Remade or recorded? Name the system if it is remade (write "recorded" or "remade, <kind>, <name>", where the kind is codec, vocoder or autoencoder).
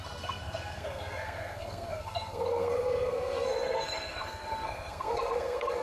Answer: remade, codec, SNAC